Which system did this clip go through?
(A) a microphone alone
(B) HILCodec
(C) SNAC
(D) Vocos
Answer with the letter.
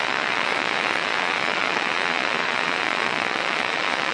D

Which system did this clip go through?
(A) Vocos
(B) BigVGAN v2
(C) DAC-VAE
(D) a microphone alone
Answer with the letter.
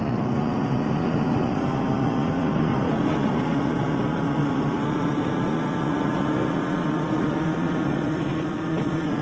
A